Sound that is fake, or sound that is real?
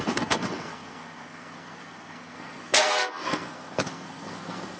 fake